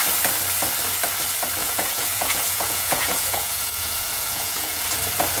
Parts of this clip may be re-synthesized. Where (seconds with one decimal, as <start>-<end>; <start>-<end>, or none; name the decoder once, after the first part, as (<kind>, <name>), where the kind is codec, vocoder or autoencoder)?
1.6-4.8 (vocoder, Vocos)